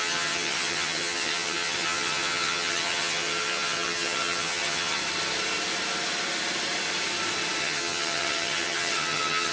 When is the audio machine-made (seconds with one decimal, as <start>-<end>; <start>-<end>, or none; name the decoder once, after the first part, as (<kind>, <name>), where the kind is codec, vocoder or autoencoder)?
0.0-5.0 (vocoder, HiFi-GAN); 7.6-9.5